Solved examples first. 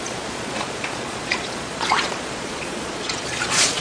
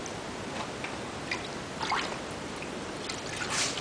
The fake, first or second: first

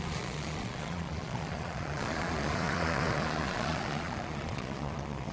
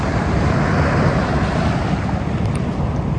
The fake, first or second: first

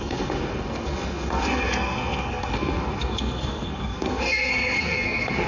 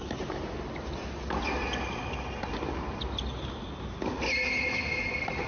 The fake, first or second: first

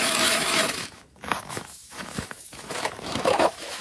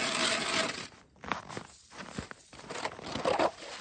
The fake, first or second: first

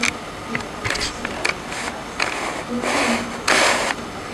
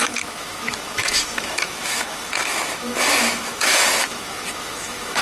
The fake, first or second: second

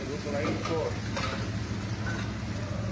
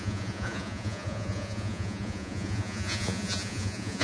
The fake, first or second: second